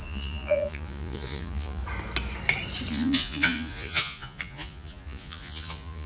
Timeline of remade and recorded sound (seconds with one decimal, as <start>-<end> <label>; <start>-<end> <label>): 0.0-1.8 remade; 1.8-2.9 recorded; 2.9-6.1 remade